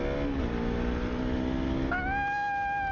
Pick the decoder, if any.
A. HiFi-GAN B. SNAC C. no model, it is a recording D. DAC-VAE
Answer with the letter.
C